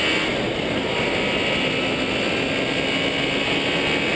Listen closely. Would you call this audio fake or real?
real